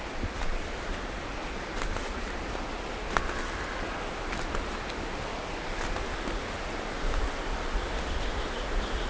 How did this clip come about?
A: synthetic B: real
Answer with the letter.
B